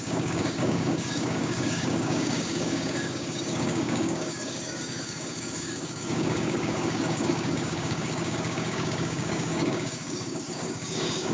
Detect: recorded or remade remade